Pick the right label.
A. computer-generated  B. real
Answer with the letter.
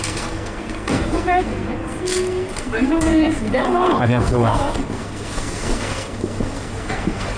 A